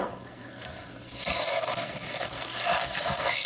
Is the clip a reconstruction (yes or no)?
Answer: yes